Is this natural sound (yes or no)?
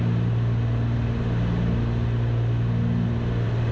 yes